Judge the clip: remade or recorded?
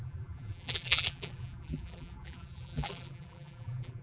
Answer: remade